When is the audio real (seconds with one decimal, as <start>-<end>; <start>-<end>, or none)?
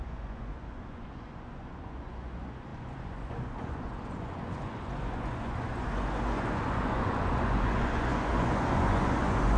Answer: none